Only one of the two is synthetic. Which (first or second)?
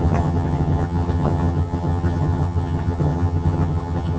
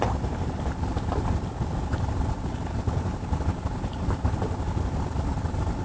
first